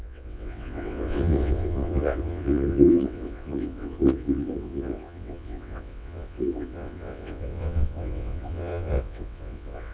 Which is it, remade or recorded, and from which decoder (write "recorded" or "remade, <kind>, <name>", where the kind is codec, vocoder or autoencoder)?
remade, vocoder, WaveNeXt